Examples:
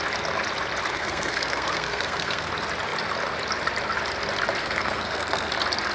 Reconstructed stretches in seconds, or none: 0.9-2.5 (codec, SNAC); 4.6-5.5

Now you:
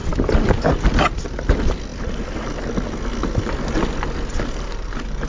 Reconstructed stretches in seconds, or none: none

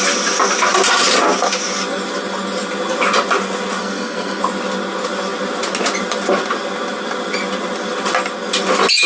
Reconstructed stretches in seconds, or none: 3.8-4.4 (codec, SNAC)